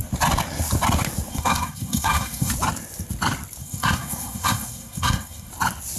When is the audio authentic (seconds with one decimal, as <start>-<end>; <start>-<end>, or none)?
0.0-1.3; 2.5-3.6; 5.5-6.0